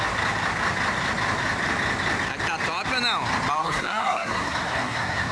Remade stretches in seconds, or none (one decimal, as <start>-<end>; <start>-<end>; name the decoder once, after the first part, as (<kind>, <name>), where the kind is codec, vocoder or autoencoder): 3.6-5.3 (codec, SNAC)